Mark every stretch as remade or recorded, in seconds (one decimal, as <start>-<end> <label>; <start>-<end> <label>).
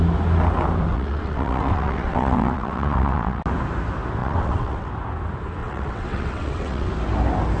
0.0-0.9 recorded; 0.9-3.4 remade; 3.4-4.2 recorded; 4.2-4.9 remade; 4.9-5.6 recorded; 5.6-6.9 remade; 6.9-7.6 recorded